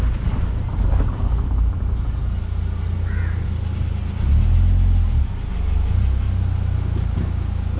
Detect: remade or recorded recorded